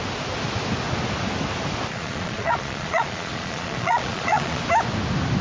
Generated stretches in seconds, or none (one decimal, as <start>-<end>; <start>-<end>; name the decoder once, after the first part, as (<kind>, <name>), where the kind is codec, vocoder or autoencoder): 1.9-4.6 (vocoder, Vocos)